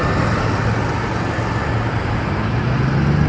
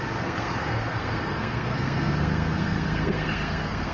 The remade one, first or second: second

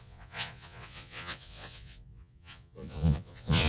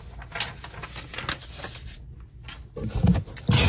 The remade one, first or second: first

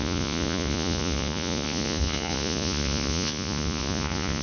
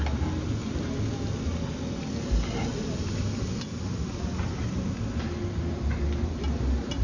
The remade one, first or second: first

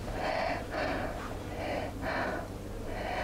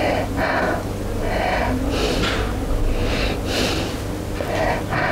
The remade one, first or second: first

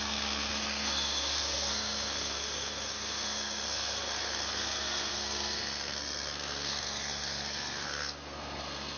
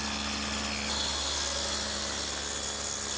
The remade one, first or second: first